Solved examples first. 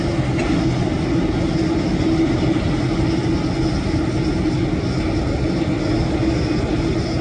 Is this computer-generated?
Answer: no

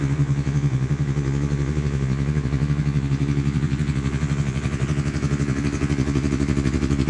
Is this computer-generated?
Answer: yes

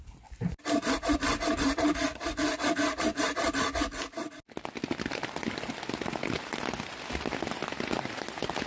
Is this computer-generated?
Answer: no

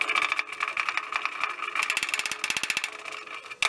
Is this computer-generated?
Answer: no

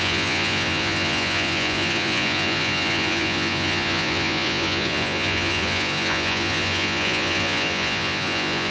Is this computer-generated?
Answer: yes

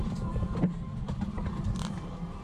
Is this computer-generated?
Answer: yes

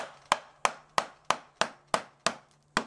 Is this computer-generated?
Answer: no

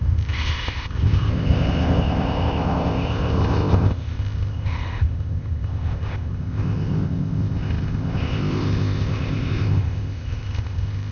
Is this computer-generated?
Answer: yes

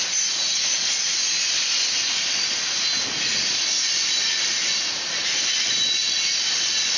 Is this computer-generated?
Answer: no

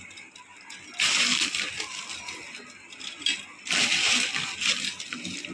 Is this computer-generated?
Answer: no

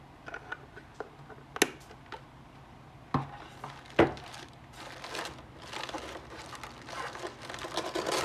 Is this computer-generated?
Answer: no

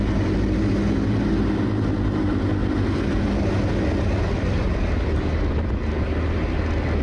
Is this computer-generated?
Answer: no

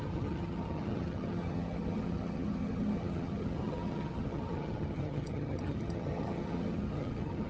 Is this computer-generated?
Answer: yes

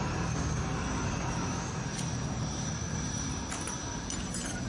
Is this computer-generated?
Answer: yes